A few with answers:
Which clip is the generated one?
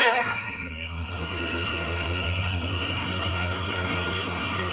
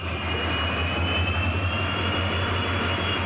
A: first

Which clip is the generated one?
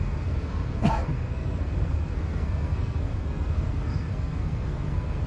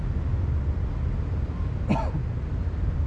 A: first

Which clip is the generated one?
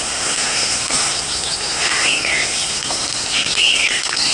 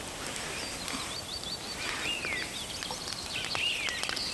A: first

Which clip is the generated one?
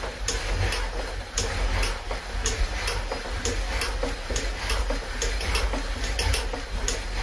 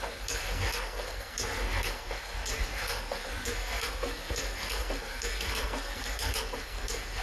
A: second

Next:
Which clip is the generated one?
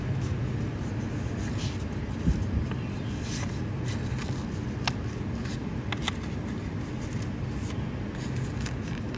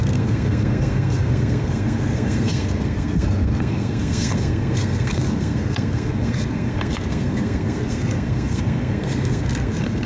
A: second